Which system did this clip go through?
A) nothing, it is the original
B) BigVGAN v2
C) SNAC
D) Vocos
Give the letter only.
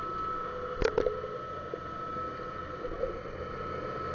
A